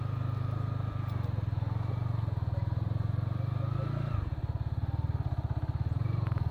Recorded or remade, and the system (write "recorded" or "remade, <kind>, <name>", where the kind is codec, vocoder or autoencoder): recorded